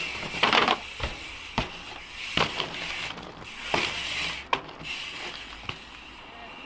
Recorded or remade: recorded